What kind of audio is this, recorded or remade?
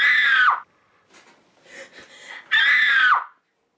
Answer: recorded